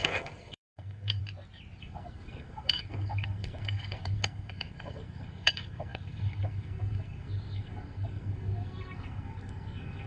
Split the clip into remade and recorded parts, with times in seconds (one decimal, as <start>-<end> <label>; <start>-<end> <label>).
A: 0.0-1.2 remade; 1.2-1.8 recorded; 1.8-10.1 remade

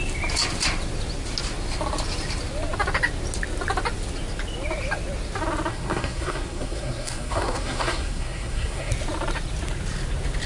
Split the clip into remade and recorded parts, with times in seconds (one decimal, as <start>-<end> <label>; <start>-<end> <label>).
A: 0.0-5.7 recorded; 5.7-8.9 remade; 8.9-10.5 recorded